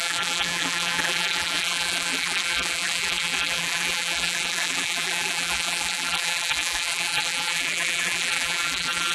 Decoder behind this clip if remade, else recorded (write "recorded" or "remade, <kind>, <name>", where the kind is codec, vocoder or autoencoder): remade, vocoder, BigVGAN v2